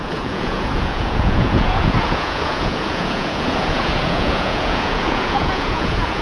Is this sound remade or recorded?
remade